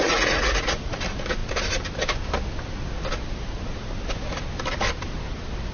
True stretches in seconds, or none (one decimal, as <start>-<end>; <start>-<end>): 1.0-5.7